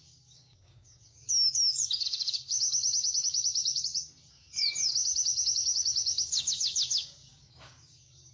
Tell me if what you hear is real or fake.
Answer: fake